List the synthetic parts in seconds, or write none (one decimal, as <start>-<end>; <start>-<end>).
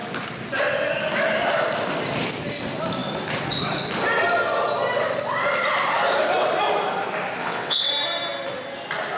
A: 7.4-7.9